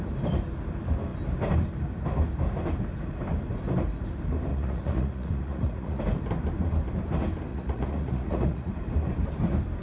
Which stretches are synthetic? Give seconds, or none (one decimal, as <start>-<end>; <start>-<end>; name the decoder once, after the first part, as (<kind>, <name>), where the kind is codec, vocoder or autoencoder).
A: 4.5-6.0 (vocoder, Vocos); 7.5-8.7